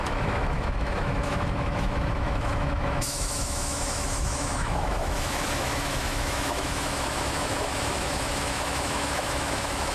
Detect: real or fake fake